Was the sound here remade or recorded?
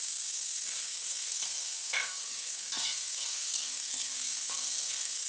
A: remade